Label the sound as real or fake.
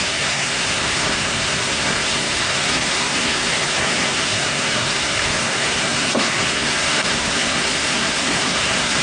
fake